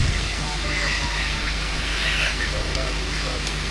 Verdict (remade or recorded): remade